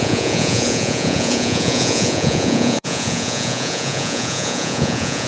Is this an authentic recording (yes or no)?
no